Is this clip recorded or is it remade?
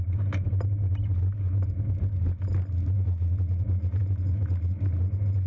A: recorded